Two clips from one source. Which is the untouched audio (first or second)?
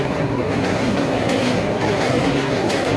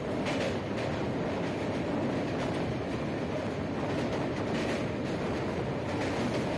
second